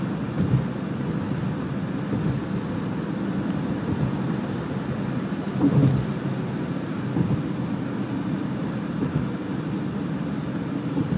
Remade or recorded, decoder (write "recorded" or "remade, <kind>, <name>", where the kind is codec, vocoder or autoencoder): recorded